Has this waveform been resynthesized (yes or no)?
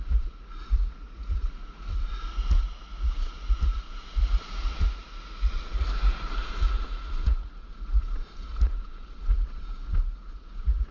yes